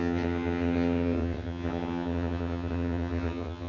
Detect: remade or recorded remade